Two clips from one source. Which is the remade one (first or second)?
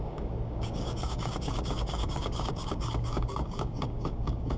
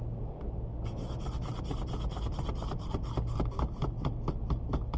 first